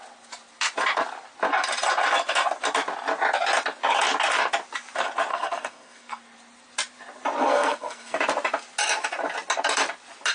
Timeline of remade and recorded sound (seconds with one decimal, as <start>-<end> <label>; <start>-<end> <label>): 0.0-5.3 recorded; 5.3-6.2 remade; 6.2-7.4 recorded; 7.4-8.2 remade; 8.2-10.3 recorded